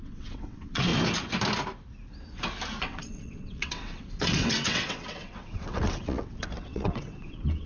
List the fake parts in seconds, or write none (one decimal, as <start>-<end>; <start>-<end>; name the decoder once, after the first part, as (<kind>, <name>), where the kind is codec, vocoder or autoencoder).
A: 0.0-0.9 (vocoder, WaveNeXt); 2.8-7.7